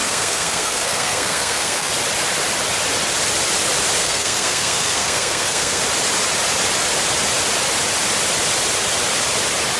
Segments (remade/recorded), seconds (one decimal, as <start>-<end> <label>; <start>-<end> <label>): 0.0-1.9 remade; 1.9-4.0 recorded; 4.0-5.8 remade; 5.8-9.8 recorded